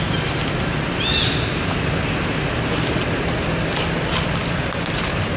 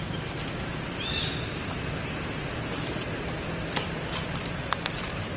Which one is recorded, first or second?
first